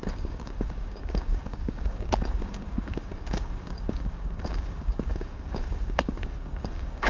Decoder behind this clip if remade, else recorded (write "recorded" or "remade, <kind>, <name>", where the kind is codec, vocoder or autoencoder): remade, codec, DAC